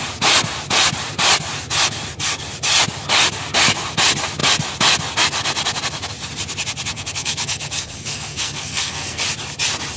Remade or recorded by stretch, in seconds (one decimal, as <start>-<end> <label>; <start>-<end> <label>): 0.0-6.9 recorded; 6.9-9.2 remade; 9.2-10.0 recorded